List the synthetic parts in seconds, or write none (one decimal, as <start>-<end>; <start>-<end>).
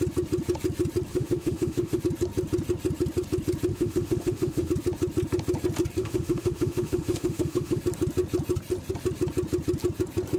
1.1-2.0; 3.7-4.7; 6.0-7.8